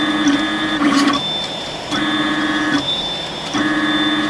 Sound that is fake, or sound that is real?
real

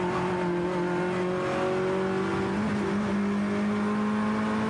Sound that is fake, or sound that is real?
real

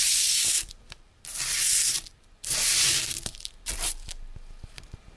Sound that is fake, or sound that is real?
fake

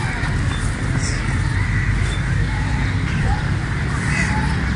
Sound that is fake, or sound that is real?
real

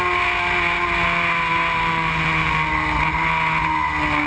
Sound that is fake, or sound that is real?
real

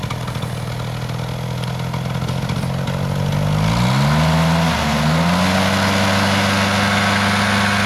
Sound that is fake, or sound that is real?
real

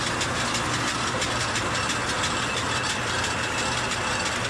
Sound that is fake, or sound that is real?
real